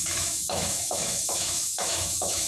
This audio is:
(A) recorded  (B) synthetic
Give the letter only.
B